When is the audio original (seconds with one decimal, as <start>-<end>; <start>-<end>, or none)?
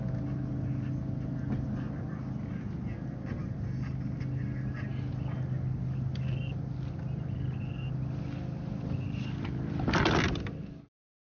0.0-11.3